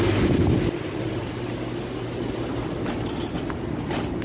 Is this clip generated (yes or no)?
no